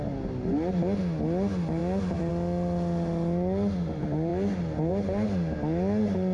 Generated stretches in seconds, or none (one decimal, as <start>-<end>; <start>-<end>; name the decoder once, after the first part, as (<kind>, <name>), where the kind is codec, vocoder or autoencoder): none

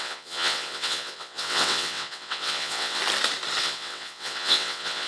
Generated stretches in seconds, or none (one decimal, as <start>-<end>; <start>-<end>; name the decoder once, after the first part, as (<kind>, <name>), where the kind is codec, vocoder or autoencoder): 0.0-3.0 (vocoder, WaveNeXt); 3.6-5.1

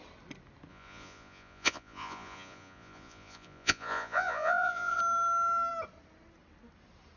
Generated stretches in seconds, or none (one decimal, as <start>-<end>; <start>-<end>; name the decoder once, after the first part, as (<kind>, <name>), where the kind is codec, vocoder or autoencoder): 0.7-5.0 (vocoder, Vocos)

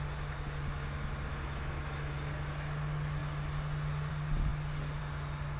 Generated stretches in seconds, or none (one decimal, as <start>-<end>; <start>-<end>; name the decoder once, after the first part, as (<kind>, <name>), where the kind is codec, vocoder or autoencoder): 1.3-2.3 (autoencoder, DAC-VAE)

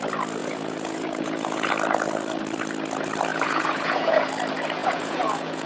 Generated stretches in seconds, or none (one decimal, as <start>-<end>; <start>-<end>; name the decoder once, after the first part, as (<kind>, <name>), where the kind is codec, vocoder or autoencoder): 0.4-1.7 (vocoder, Vocos); 3.3-4.2; 4.8-5.7